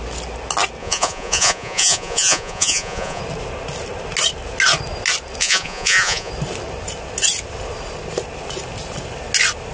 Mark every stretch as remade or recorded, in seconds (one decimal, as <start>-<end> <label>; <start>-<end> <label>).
0.0-0.8 recorded; 0.8-3.2 remade; 3.2-5.4 recorded; 5.4-6.3 remade; 6.3-9.7 recorded

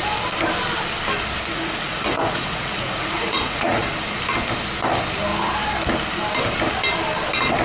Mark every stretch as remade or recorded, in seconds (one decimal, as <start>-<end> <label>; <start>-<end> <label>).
0.0-1.5 recorded; 1.5-3.8 remade; 3.8-7.6 recorded

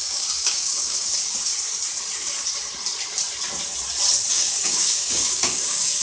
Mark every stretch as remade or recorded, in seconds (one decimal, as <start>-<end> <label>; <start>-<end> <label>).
0.0-1.5 remade; 1.5-4.3 recorded; 4.3-6.0 remade